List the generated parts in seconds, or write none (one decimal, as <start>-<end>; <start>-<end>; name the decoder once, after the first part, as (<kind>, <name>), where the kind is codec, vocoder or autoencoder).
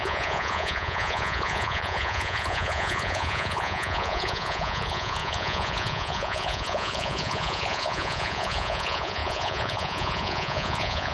0.0-11.1 (vocoder, Vocos)